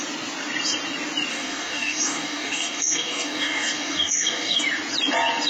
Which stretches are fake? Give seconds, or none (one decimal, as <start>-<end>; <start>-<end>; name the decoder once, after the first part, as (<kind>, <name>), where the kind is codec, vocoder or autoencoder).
1.3-4.6 (codec, DAC)